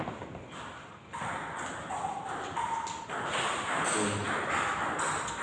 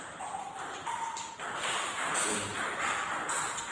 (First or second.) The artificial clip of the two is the second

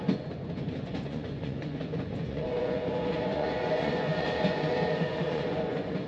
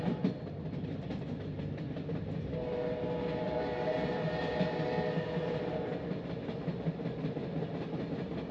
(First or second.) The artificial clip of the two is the first